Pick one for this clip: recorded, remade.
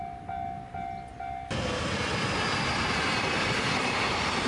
recorded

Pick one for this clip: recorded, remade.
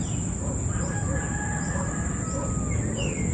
recorded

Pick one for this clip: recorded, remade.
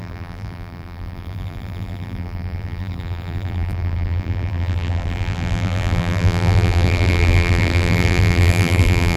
remade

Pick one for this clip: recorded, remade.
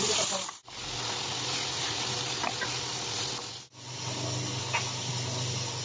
recorded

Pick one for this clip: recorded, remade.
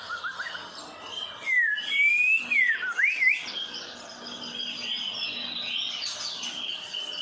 recorded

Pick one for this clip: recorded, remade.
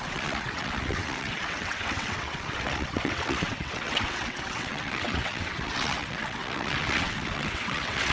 remade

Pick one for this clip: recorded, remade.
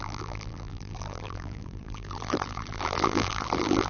remade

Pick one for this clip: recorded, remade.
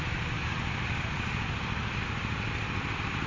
recorded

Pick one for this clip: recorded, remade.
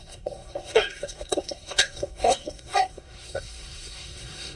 remade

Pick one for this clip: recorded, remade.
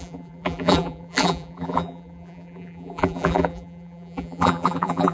remade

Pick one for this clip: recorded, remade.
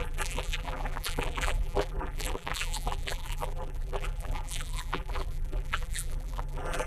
remade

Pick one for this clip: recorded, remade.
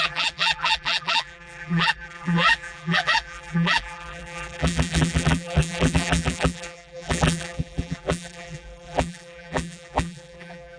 remade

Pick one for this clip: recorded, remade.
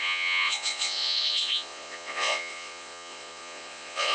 remade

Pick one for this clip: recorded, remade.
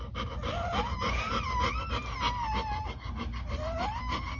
recorded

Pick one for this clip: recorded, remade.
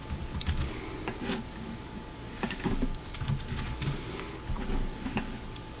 remade